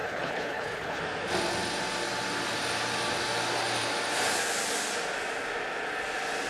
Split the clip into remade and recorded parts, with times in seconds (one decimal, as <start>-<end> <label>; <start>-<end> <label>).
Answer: 0.0-1.0 remade; 1.0-6.5 recorded